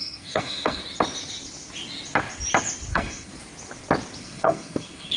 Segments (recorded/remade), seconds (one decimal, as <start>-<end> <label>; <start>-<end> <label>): 0.0-0.8 remade; 0.8-2.9 recorded; 2.9-3.3 remade; 3.3-4.2 recorded; 4.2-5.2 remade